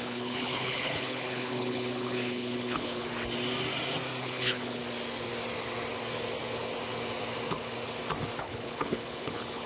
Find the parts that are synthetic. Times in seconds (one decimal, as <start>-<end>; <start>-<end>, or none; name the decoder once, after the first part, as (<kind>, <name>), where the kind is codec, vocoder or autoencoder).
0.0-3.1 (codec, HILCodec); 4.2-4.8; 8.4-9.7